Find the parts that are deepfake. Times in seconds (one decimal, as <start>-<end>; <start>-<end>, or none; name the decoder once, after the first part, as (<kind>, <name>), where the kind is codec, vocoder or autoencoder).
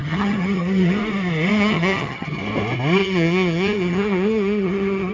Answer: 0.0-1.0 (vocoder, HiFi-GAN); 1.5-2.4; 3.0-5.1